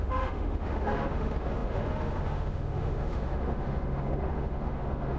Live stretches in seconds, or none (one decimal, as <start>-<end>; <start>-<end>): none